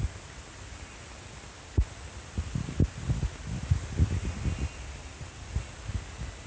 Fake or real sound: real